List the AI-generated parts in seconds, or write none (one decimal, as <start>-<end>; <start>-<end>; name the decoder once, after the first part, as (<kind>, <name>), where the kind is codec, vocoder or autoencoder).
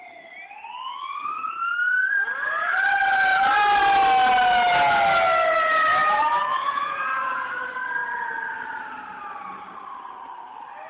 6.5-7.5 (vocoder, Vocos)